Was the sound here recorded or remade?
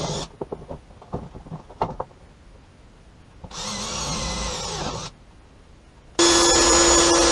recorded